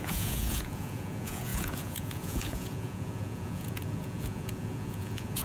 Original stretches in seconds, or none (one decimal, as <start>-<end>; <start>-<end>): none